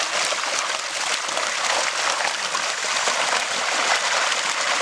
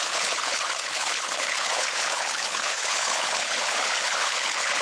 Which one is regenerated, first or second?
second